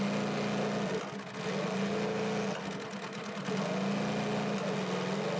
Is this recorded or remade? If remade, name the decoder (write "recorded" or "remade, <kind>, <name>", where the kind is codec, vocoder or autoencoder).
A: recorded